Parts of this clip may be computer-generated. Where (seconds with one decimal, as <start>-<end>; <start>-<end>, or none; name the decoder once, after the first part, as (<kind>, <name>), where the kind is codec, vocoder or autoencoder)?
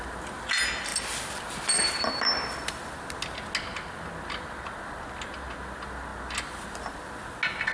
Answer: none